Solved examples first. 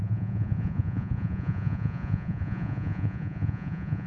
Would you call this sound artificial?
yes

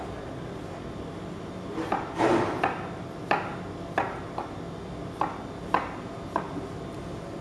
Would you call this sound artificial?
no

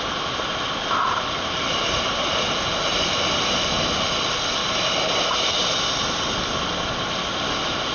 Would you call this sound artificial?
no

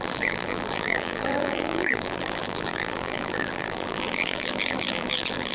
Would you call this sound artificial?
yes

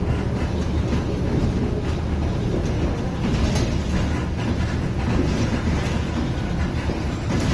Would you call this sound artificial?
no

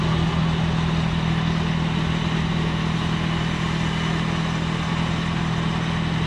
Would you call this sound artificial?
no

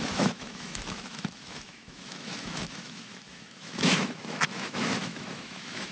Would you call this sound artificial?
yes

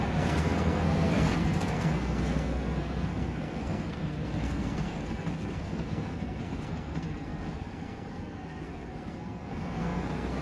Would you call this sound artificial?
yes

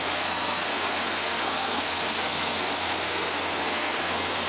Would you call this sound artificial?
yes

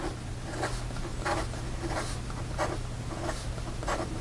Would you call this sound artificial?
no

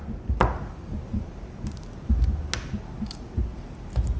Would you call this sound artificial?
no